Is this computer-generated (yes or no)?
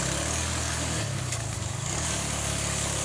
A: yes